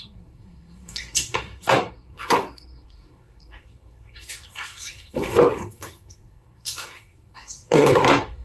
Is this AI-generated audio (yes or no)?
yes